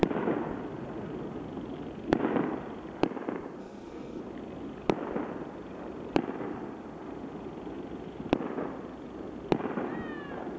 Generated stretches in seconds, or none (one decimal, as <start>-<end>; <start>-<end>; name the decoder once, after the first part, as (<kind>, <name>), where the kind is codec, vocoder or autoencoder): 3.6-4.2 (codec, SNAC)